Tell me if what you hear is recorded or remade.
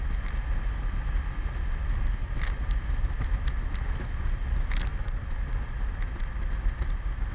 recorded